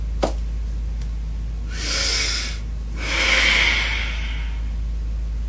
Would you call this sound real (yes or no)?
yes